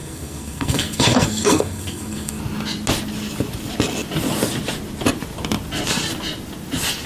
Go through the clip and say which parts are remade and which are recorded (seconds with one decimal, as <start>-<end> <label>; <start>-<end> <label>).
0.0-2.4 remade; 2.4-7.1 recorded